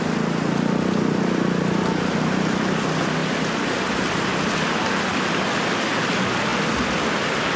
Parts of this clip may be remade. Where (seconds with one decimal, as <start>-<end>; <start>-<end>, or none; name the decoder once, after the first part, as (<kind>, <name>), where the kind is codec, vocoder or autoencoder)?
none